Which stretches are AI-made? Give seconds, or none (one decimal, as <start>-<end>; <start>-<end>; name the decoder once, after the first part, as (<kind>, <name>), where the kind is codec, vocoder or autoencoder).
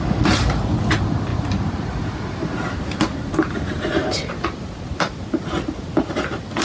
1.3-5.3 (vocoder, BigVGAN v2)